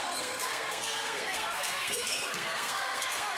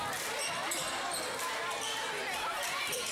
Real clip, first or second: second